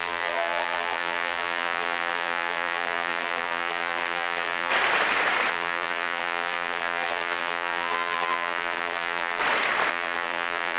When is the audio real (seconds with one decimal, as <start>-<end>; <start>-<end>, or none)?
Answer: 4.7-5.5; 9.4-9.9